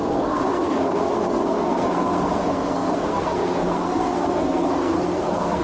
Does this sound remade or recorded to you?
remade